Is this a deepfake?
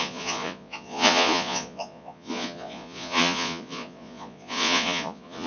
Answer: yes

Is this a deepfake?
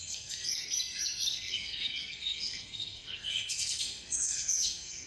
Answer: yes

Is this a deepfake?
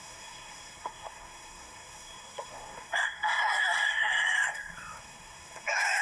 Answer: yes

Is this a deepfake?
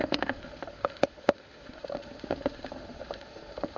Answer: yes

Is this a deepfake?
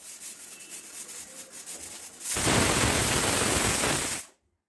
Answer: no